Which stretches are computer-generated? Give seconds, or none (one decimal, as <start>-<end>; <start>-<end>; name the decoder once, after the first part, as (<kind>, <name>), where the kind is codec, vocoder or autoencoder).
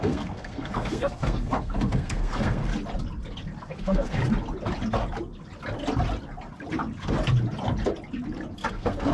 0.0-2.7 (codec, SNAC); 3.6-4.2; 8.7-9.1